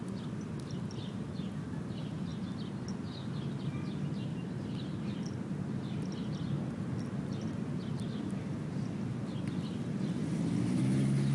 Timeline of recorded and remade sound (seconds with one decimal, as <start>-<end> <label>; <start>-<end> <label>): 0.0-11.3 recorded